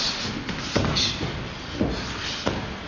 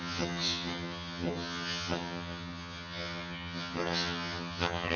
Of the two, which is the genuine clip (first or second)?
first